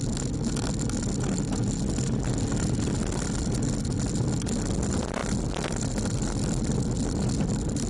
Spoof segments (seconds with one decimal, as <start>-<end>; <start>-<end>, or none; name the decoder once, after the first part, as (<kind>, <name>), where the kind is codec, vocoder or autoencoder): none